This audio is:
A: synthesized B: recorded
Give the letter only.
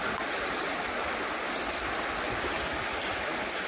B